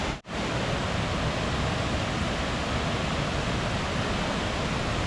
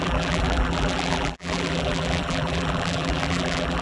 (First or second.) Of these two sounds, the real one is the first